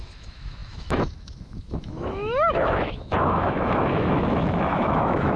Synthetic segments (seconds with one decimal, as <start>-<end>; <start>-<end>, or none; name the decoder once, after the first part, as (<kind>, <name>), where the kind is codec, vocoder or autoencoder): 0.0-5.4 (autoencoder, DAC-VAE)